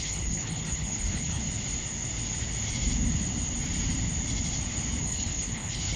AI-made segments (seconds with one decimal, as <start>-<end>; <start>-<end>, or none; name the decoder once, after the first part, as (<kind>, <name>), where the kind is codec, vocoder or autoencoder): 0.0-1.4 (codec, HILCodec); 5.0-6.0